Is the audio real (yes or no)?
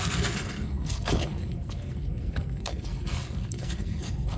no